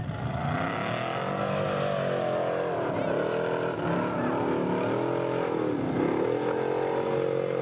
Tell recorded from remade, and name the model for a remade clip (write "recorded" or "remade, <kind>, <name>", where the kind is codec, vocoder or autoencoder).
recorded